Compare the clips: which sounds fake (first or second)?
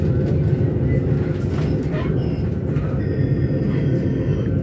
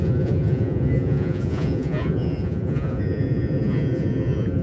second